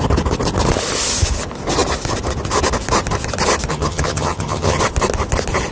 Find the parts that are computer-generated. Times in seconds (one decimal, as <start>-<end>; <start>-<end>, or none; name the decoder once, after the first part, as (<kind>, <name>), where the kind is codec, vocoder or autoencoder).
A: 3.7-4.8 (vocoder, HiFi-GAN)